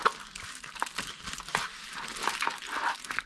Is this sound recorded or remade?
recorded